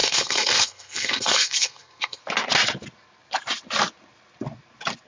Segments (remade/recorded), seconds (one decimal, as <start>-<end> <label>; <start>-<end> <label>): 0.0-2.2 remade; 2.2-5.1 recorded